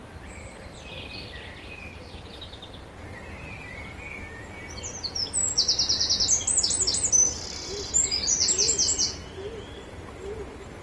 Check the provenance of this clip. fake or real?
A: real